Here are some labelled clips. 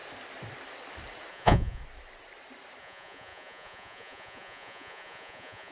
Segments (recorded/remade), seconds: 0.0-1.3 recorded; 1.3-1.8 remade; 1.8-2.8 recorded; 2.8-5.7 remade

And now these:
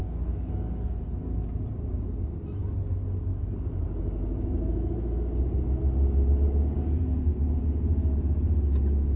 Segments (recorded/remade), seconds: 0.0-0.5 remade; 0.5-9.2 recorded

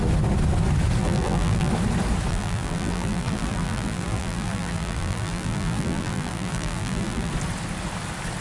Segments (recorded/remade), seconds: 0.0-1.0 recorded; 1.0-1.7 remade; 1.7-2.3 recorded; 2.3-7.3 remade; 7.3-8.4 recorded

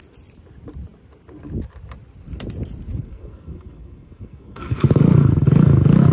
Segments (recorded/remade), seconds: 0.0-3.0 recorded; 3.0-5.3 remade; 5.3-6.1 recorded

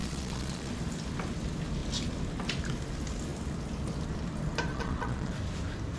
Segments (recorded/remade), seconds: 0.0-0.7 remade; 0.7-4.7 recorded; 4.7-5.3 remade; 5.3-6.0 recorded

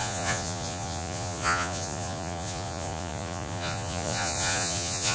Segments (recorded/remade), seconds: 0.0-5.1 remade